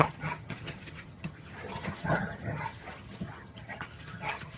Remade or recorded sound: remade